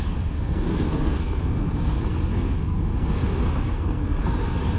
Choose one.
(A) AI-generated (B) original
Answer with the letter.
A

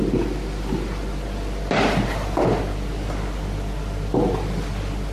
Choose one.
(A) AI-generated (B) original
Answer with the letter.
B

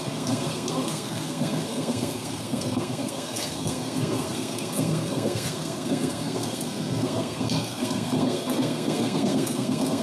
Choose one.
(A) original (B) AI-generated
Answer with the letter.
B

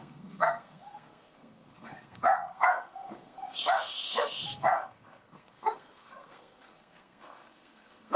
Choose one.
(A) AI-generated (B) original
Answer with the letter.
A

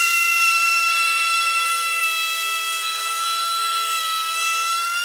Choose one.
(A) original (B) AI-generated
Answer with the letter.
B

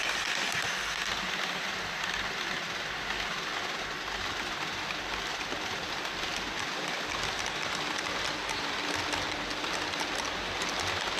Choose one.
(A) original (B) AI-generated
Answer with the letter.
A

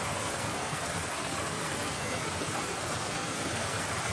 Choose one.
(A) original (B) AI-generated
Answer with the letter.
B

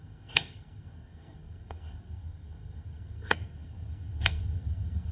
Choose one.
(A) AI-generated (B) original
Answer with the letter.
A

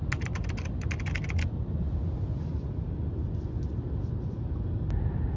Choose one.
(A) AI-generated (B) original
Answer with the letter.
B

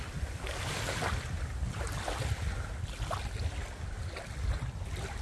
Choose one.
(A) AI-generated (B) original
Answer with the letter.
B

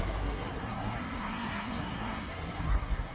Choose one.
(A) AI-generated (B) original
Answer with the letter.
A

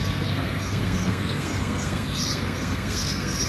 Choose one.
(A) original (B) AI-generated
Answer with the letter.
B